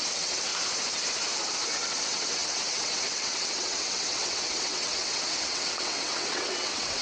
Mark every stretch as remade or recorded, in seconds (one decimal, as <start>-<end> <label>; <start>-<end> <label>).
0.0-0.5 remade; 0.5-1.7 recorded; 1.7-7.0 remade